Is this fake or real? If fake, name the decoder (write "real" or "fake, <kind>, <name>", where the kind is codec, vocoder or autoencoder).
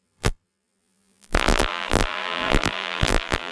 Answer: fake, vocoder, BigVGAN v2